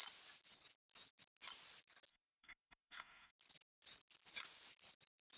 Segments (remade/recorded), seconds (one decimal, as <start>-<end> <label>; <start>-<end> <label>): 0.0-2.1 recorded; 2.1-3.3 remade; 3.3-5.4 recorded

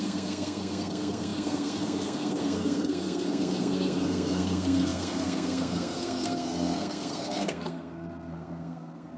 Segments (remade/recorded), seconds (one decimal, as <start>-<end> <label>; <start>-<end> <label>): 0.0-9.2 remade

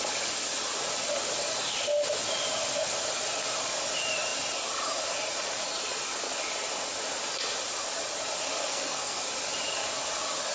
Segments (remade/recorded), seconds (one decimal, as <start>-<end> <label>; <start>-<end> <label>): 0.0-8.7 recorded; 8.7-9.2 remade; 9.2-10.5 recorded